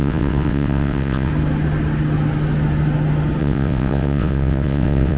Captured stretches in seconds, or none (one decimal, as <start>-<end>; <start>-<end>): 1.3-3.4

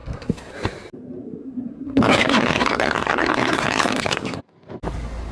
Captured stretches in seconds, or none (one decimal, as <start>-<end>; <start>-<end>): 0.5-1.2; 4.4-5.3

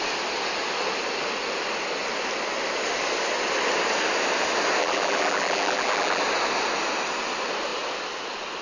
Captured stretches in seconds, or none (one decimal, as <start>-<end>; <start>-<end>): 0.0-4.8; 6.2-8.6

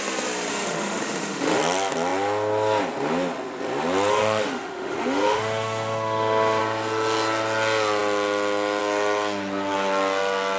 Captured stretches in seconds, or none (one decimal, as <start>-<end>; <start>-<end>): 0.0-0.5; 1.6-4.1; 6.6-10.6